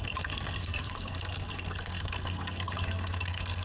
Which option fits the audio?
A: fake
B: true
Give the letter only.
A